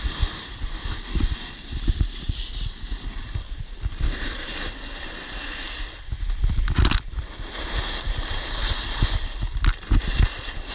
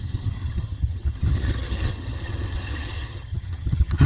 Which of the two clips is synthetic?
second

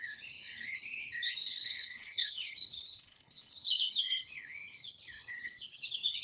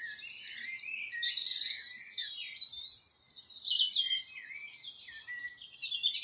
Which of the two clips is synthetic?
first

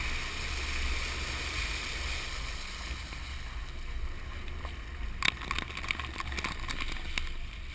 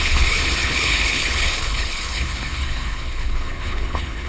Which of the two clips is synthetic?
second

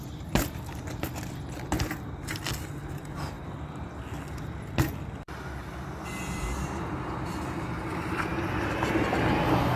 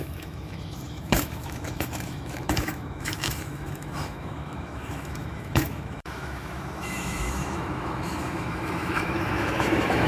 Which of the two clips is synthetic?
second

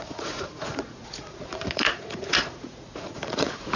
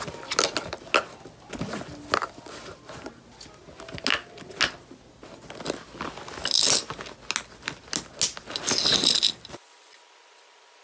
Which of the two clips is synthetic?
first